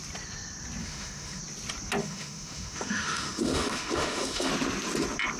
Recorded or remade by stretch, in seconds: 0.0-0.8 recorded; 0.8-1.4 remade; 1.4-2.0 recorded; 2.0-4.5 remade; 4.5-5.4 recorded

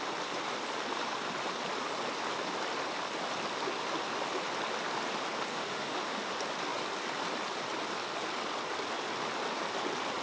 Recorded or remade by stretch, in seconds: 0.0-5.5 recorded; 5.5-6.3 remade; 6.3-10.2 recorded

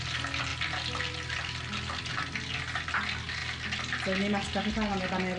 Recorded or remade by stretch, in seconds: 0.0-5.4 recorded

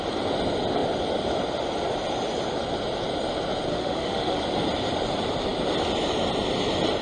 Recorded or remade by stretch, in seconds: 0.0-3.7 recorded; 3.7-4.4 remade; 4.4-7.0 recorded